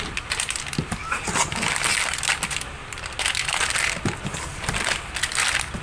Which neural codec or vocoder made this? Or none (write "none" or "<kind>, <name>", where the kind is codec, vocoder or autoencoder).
none